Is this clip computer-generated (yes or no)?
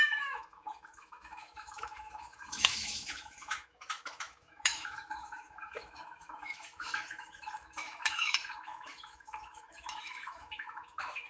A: yes